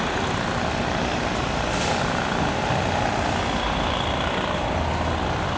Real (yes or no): yes